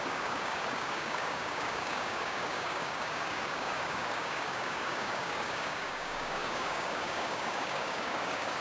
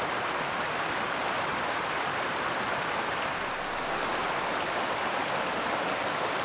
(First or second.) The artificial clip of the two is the first